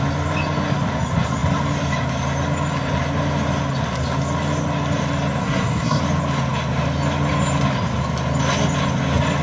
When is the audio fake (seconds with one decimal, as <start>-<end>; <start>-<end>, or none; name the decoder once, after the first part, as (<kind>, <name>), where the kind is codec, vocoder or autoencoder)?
5.4-6.0 (codec, SNAC)